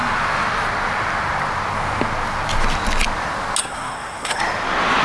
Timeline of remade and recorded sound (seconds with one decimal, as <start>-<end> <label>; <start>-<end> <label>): 0.0-3.6 recorded; 3.6-4.4 remade; 4.4-5.0 recorded